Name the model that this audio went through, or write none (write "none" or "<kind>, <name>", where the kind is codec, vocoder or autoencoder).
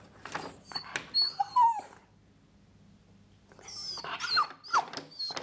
none